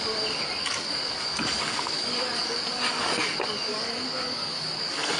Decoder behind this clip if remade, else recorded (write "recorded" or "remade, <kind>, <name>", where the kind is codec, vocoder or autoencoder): remade, codec, DAC